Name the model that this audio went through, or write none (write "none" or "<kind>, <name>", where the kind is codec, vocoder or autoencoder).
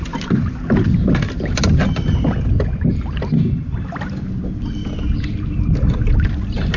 none